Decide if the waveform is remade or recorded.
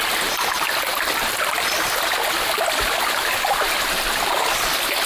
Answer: recorded